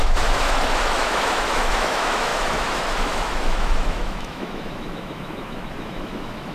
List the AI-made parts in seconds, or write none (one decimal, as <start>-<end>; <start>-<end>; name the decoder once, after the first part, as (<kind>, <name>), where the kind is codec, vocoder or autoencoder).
0.0-6.5 (autoencoder, DAC-VAE)